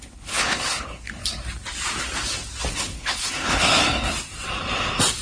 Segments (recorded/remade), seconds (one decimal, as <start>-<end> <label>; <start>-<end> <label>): 0.0-1.2 remade; 1.2-2.7 recorded; 2.7-3.8 remade; 3.8-5.2 recorded